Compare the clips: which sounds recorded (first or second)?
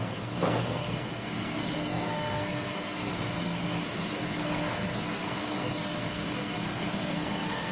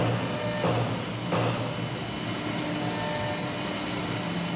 second